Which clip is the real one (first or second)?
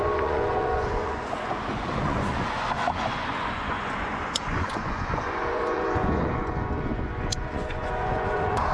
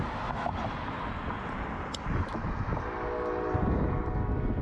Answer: second